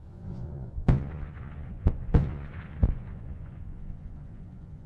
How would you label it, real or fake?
fake